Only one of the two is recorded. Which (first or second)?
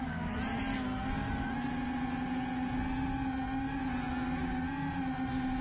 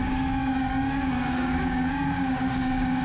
first